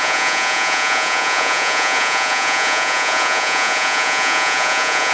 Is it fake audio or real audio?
fake